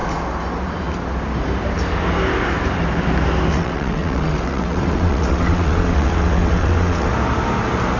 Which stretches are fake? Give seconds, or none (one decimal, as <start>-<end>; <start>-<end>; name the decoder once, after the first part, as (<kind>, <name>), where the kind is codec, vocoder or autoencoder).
3.5-7.1 (vocoder, WaveNeXt)